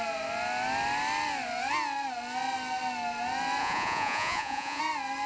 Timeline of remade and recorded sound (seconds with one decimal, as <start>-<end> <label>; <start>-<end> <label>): 0.0-3.6 recorded; 3.6-4.8 remade; 4.8-5.3 recorded